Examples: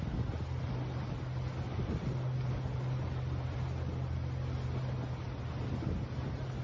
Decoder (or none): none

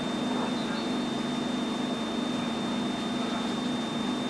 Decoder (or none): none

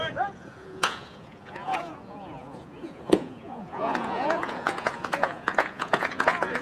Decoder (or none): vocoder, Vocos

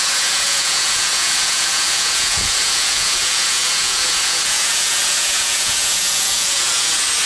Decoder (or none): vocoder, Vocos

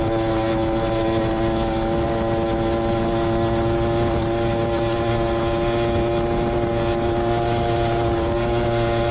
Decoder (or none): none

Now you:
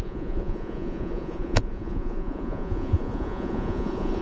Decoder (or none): vocoder, Vocos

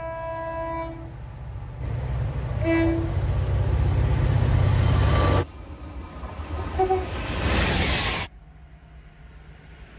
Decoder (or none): none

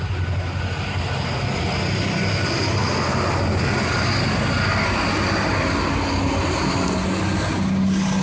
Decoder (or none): none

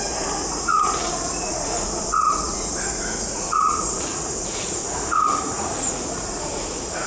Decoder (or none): vocoder, Vocos